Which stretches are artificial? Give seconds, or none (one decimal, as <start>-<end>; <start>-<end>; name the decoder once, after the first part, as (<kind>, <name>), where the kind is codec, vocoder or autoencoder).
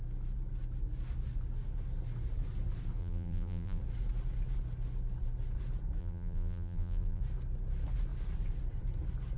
3.0-3.8 (vocoder, BigVGAN v2); 6.0-7.2